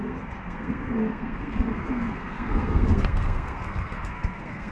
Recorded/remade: remade